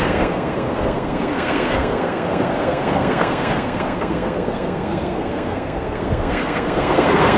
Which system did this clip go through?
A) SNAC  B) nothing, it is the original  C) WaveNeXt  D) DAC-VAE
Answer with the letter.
A